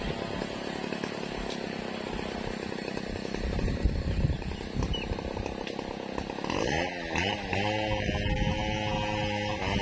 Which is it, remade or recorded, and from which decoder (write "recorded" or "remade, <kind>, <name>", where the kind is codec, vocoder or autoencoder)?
recorded